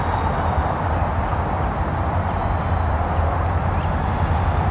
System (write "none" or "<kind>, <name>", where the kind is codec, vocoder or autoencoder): none